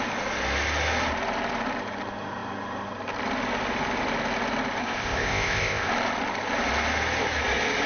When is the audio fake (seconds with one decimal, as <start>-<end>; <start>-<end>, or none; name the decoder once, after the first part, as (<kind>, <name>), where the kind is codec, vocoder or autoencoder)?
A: 4.8-5.9 (codec, ZipCodec)